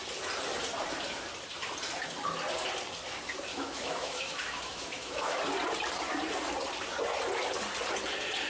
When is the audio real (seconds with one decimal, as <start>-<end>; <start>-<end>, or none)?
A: 0.0-3.5; 5.4-8.5